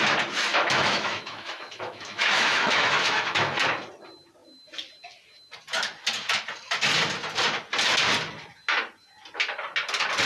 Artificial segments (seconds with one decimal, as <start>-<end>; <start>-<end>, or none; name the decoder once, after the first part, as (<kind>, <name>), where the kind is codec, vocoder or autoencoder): 0.5-3.5 (autoencoder, DAC-VAE)